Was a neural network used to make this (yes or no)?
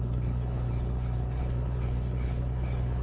yes